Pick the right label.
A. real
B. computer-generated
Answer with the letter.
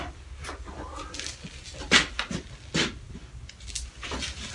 A